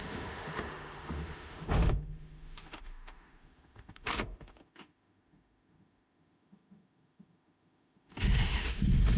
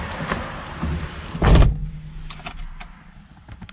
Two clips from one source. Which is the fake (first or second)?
first